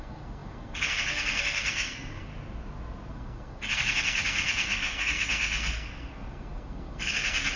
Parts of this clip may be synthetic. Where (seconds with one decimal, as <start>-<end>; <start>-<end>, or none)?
0.0-2.3; 3.1-7.6

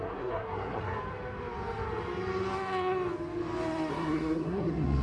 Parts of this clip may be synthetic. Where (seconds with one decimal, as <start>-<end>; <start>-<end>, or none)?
0.0-0.9; 3.9-5.0